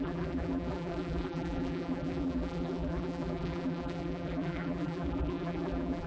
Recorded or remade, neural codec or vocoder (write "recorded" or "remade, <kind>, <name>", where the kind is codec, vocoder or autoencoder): remade, vocoder, BigVGAN v2